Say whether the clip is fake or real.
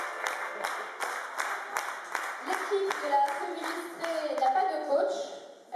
real